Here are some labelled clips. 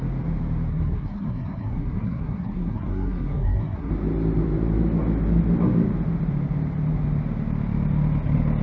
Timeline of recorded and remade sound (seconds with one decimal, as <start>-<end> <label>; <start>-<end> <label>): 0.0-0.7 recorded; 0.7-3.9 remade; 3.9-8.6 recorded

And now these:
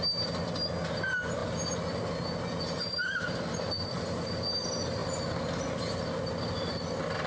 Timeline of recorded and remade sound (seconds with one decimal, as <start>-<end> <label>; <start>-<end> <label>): 0.0-7.3 recorded

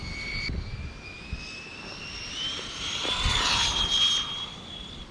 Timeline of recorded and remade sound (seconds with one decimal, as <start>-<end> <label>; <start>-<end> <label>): 0.0-1.7 recorded; 1.7-3.9 remade; 3.9-5.1 recorded

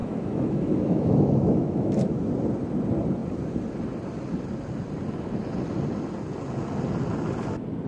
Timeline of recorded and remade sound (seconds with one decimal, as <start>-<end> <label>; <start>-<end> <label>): 0.0-2.3 remade; 2.3-7.9 recorded